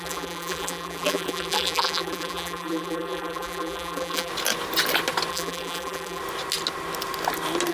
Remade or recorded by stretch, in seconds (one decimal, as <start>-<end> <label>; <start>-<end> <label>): 0.0-4.3 remade; 4.3-5.3 recorded; 5.3-6.2 remade; 6.2-7.7 recorded